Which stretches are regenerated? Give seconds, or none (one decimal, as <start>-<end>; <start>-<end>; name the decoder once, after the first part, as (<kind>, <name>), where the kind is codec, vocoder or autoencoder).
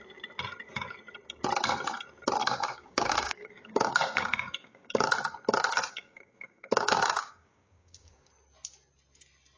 2.4-5.1 (codec, DAC); 5.9-8.3